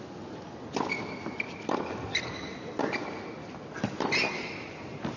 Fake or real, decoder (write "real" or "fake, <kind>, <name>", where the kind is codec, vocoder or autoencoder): real